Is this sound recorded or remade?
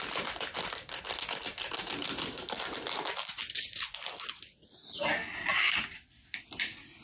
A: recorded